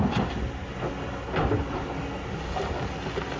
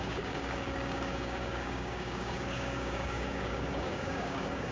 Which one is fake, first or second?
second